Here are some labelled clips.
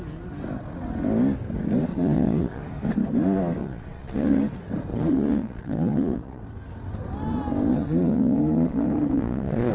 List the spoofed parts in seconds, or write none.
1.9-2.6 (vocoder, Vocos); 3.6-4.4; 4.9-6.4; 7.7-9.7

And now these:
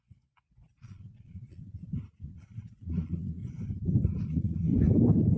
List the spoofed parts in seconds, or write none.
0.0-1.8 (vocoder, Vocos); 2.3-3.4; 4.2-4.7